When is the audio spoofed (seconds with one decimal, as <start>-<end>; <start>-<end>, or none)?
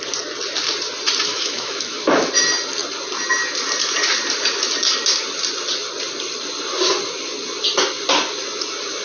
1.3-2.3